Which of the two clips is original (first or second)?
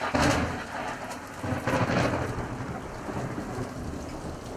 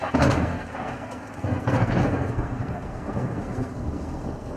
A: first